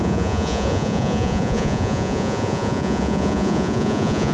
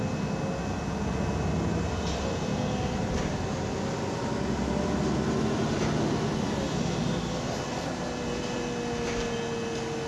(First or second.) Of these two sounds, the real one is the second